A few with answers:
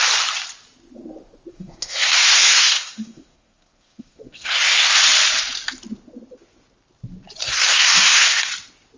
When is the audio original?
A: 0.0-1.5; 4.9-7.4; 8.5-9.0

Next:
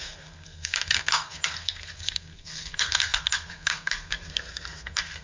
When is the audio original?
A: none

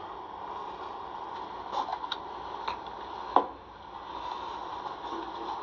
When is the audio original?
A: 0.0-5.6